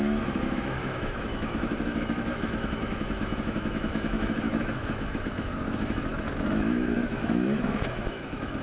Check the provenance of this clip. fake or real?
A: fake